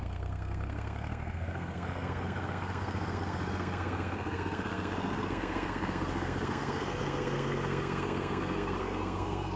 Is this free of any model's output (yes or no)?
no